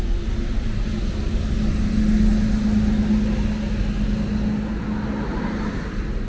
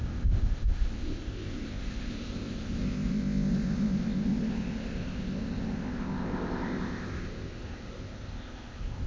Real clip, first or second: first